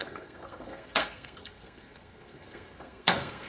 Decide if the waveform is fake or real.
fake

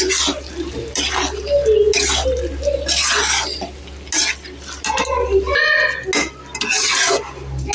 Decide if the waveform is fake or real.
real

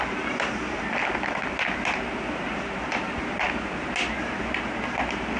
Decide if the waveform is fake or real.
real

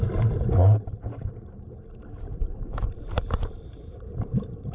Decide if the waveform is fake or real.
fake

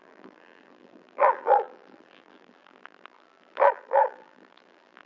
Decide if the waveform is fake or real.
fake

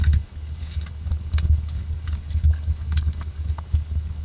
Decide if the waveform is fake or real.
fake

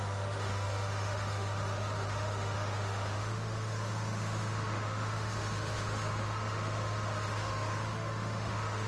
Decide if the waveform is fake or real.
fake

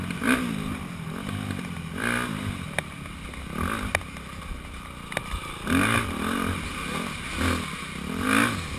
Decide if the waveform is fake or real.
real